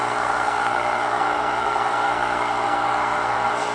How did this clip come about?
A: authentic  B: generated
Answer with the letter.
B